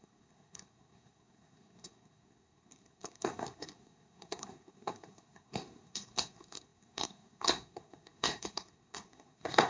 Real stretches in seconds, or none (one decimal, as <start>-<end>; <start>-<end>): none